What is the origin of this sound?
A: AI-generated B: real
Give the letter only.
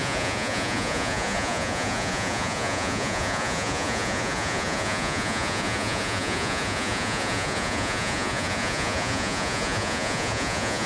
A